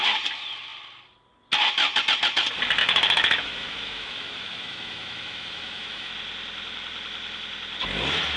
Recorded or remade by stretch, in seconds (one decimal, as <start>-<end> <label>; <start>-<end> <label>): 0.0-2.8 recorded; 2.8-6.1 remade; 6.1-8.4 recorded